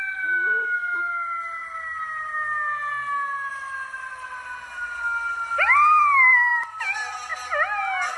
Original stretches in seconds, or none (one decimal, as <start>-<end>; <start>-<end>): 0.0-8.2